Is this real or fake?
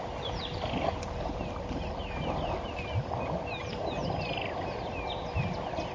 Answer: real